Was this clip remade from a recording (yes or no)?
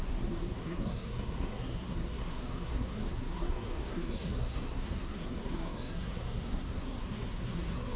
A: yes